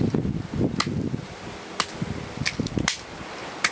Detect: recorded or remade recorded